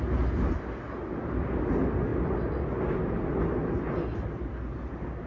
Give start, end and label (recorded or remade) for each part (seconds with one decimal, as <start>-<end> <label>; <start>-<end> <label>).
0.0-5.3 recorded